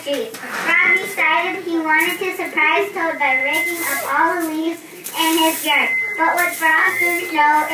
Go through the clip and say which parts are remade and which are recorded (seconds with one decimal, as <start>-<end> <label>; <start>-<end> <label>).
0.0-4.6 recorded; 4.6-5.1 remade; 5.1-6.7 recorded; 6.7-7.2 remade; 7.2-7.7 recorded